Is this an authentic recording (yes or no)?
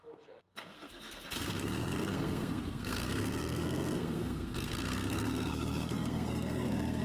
no